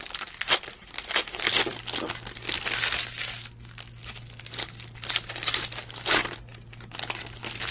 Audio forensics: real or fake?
real